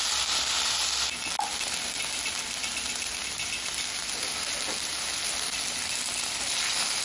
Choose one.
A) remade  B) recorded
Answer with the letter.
B